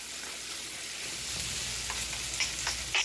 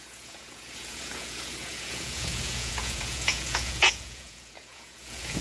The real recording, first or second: first